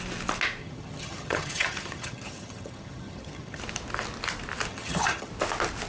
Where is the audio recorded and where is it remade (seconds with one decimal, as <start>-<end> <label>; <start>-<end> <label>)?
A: 0.0-0.6 recorded; 0.6-3.6 remade; 3.6-4.7 recorded; 4.7-5.3 remade; 5.3-5.9 recorded